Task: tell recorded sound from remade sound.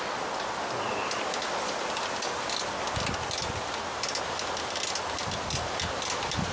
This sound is recorded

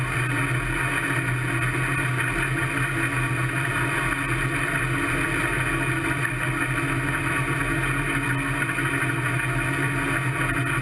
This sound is recorded